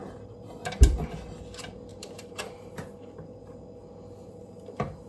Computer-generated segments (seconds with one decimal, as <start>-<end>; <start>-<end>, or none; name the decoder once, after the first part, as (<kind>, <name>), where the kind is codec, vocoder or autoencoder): 0.0-0.5 (vocoder, BigVGAN v2); 1.9-3.4